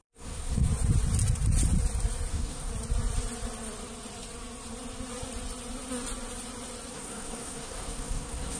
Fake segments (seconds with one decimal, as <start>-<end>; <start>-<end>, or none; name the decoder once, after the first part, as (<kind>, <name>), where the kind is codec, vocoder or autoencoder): 0.0-0.7 (codec, SNAC); 2.3-2.7; 6.9-8.6